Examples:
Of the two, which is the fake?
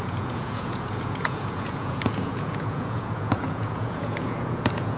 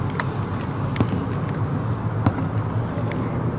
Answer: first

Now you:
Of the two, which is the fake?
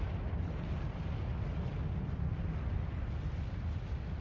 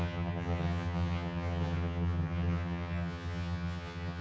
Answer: second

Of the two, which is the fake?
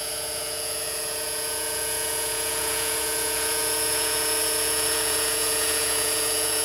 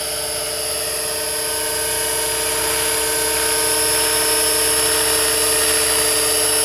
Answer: first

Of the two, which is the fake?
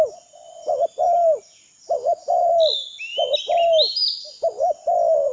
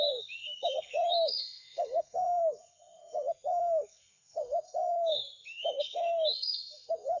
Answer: second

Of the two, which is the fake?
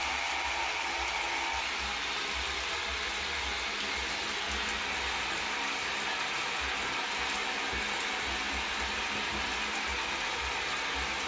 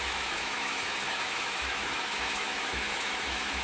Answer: second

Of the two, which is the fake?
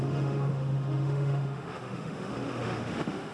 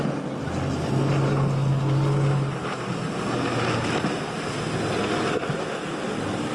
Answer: first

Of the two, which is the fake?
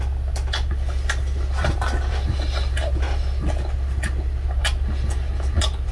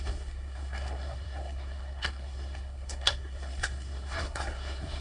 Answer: second